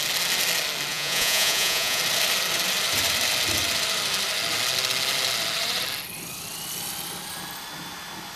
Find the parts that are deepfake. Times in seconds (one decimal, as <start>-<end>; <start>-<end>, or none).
0.9-2.0